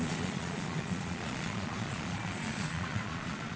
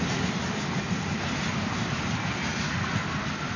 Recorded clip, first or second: second